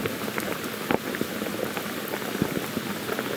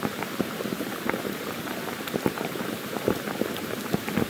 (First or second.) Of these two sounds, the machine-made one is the second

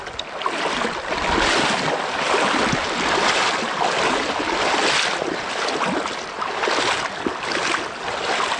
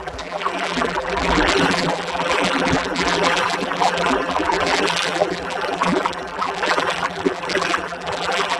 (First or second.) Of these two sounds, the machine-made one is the second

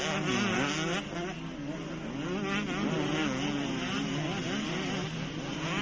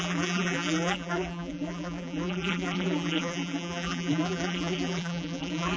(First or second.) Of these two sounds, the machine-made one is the second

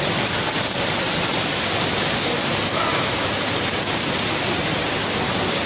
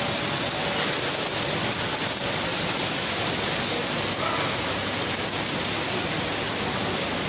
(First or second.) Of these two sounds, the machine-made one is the first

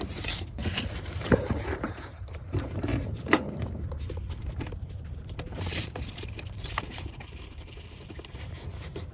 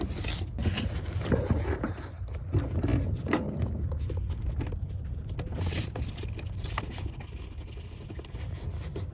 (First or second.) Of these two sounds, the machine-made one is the first